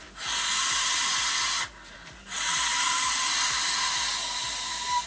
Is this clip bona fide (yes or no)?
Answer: yes